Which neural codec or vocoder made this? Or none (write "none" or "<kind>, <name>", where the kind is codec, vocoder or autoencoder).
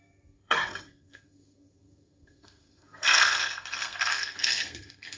codec, SNAC